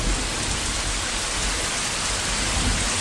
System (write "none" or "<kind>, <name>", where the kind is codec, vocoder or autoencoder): none